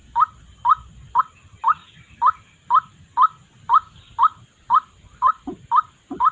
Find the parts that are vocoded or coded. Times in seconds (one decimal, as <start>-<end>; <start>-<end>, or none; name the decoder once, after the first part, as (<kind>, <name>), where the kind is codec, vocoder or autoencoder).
none